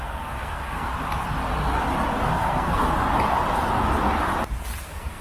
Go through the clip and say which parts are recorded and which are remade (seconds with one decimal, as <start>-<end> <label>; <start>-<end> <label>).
0.0-0.9 remade; 0.9-2.4 recorded; 2.4-2.8 remade; 2.8-4.8 recorded; 4.8-5.2 remade